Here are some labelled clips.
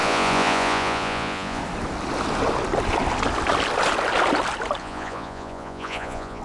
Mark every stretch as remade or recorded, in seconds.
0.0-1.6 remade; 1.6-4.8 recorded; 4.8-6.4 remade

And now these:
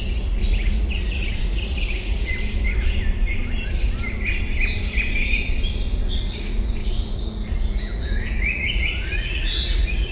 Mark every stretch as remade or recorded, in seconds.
0.0-2.3 remade; 2.3-6.3 recorded; 6.3-10.1 remade

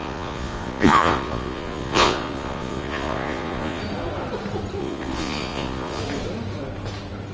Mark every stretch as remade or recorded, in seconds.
0.0-3.8 remade; 3.8-4.8 recorded; 4.8-6.0 remade; 6.0-7.3 recorded

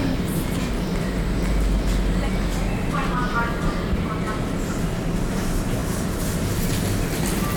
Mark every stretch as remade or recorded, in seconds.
0.0-7.6 recorded

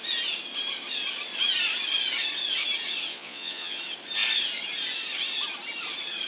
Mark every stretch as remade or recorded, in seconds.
0.0-3.1 recorded; 3.1-3.8 remade; 3.8-6.3 recorded

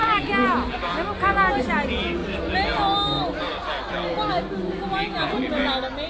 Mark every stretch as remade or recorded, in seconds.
0.0-6.1 recorded

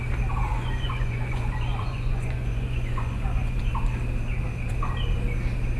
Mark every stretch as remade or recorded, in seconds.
0.0-0.5 recorded; 0.5-3.7 remade; 3.7-5.8 recorded